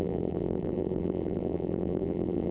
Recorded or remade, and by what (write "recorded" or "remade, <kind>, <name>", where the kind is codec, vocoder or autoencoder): remade, vocoder, BigVGAN v2